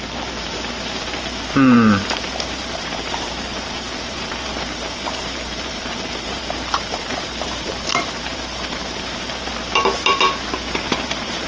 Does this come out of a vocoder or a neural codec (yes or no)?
yes